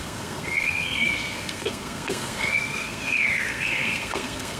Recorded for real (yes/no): no